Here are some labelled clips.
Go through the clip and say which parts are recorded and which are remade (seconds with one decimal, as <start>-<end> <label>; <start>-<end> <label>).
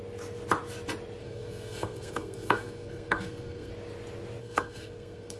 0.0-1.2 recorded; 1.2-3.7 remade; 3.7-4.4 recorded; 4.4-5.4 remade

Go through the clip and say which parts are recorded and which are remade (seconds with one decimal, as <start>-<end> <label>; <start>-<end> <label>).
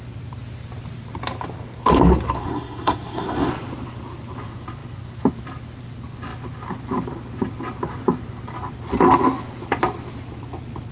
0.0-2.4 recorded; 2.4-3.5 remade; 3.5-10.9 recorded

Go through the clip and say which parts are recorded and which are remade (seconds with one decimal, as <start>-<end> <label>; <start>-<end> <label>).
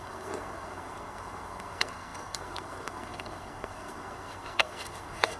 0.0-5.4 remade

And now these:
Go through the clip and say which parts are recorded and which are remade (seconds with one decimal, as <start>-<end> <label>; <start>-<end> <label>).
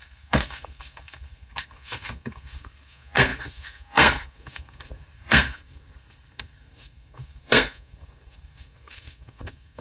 0.0-9.8 remade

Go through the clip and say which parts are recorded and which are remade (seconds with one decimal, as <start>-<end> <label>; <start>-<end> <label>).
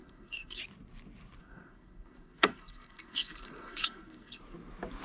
0.0-0.6 remade; 0.6-1.4 recorded; 1.4-4.4 remade; 4.4-5.0 recorded